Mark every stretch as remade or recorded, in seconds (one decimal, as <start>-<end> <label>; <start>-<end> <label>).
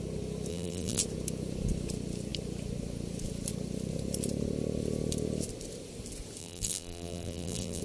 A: 0.0-0.5 recorded; 0.5-1.0 remade; 1.0-6.4 recorded; 6.4-7.8 remade